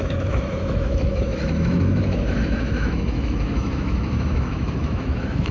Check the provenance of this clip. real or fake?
fake